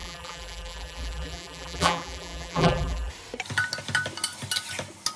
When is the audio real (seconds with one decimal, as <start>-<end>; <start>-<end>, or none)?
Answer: 3.1-5.2